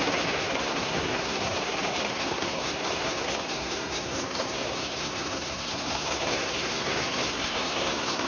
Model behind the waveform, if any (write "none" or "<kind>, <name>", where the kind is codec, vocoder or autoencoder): codec, SNAC